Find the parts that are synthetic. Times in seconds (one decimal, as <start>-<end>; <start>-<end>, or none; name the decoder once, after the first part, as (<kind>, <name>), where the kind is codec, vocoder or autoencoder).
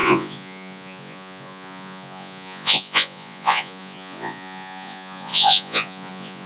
0.0-6.5 (vocoder, Vocos)